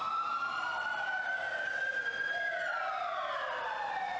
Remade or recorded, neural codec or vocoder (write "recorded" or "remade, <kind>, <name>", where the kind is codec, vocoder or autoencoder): recorded